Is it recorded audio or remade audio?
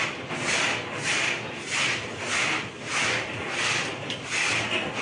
recorded